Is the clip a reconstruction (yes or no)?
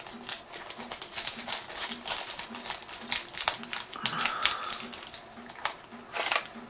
no